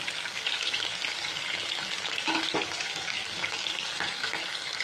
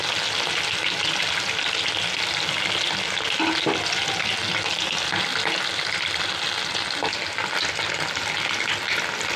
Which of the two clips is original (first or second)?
second